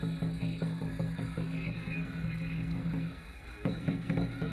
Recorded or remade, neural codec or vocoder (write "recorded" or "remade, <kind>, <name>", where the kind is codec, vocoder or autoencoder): remade, codec, SNAC